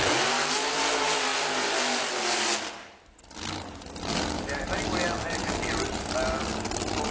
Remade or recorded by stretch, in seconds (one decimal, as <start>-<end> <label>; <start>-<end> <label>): 0.0-7.1 recorded

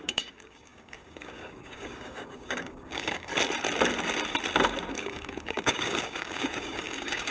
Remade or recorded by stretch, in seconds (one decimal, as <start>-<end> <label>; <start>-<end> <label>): 0.0-3.3 remade; 3.3-4.9 recorded; 4.9-7.3 remade